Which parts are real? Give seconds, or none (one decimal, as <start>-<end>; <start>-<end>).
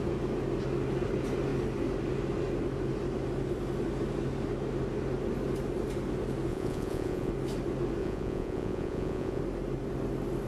0.0-6.5; 7.3-8.0; 9.4-10.5